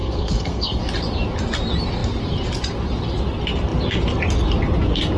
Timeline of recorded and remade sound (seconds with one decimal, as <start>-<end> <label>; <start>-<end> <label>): 0.0-0.8 remade; 0.8-5.2 recorded